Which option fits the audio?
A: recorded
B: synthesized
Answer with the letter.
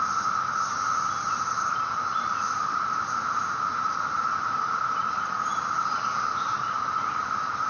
B